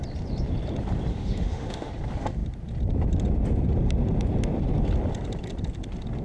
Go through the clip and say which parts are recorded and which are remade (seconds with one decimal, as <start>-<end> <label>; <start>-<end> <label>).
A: 0.0-1.1 recorded; 1.1-1.9 remade; 1.9-6.2 recorded